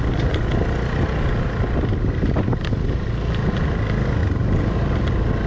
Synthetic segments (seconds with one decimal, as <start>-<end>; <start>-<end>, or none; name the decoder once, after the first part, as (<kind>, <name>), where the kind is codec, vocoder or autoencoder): none